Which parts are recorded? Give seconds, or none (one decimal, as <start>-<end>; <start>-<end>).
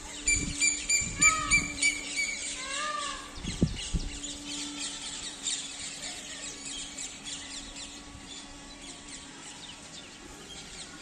2.4-5.1